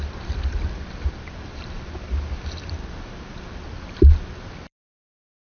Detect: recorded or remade recorded